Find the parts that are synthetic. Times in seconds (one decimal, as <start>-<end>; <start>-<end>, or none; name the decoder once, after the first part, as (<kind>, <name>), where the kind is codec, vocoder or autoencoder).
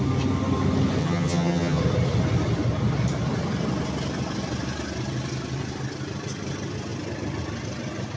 1.0-1.8 (vocoder, HiFi-GAN)